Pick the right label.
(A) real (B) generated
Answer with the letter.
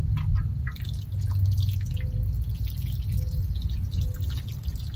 A